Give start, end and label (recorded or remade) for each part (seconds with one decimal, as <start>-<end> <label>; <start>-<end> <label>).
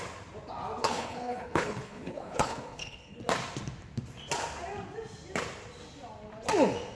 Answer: 0.0-0.8 recorded; 0.8-3.2 remade; 3.2-6.9 recorded